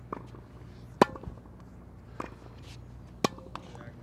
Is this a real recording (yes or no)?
yes